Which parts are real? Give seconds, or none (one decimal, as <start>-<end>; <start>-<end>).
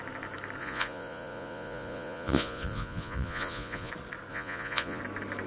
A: 0.0-0.6; 3.9-4.3; 5.0-5.5